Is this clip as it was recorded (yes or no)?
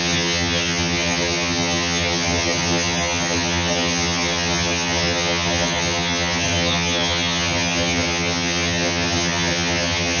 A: no